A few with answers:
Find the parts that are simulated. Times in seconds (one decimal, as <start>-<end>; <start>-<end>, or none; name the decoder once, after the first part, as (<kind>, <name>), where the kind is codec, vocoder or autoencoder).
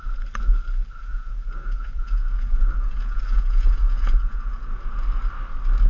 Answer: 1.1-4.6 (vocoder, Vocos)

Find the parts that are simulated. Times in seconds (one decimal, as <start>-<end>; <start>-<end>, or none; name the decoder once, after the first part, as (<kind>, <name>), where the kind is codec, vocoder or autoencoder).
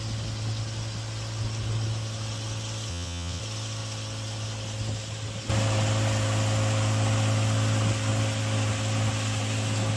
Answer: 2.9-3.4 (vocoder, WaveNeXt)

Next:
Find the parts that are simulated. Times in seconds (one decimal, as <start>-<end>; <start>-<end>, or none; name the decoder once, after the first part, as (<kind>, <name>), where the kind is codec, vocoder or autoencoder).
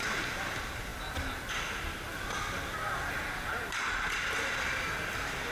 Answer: none